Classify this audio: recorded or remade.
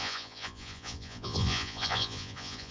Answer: remade